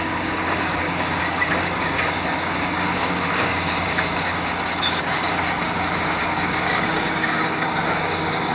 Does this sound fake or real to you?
fake